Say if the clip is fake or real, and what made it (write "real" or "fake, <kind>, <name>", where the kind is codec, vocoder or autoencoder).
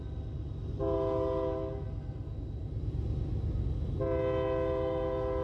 real